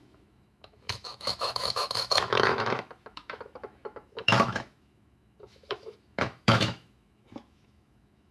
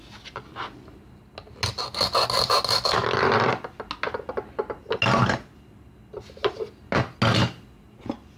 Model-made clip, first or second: first